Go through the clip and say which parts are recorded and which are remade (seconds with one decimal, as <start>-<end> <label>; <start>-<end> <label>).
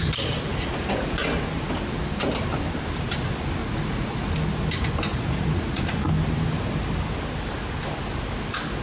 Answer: 0.0-3.6 recorded; 3.6-4.3 remade; 4.3-5.1 recorded; 5.1-5.8 remade; 5.8-8.8 recorded